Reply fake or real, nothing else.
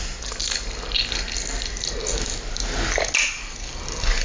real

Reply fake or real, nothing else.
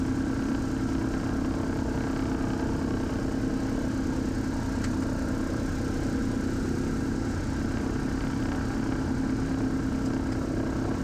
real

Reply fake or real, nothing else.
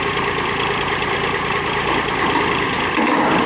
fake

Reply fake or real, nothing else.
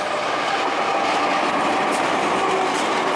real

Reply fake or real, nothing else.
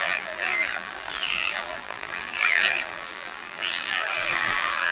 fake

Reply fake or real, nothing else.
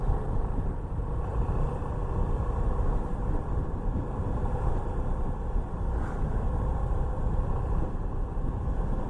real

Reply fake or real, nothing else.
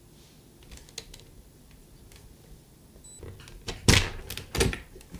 real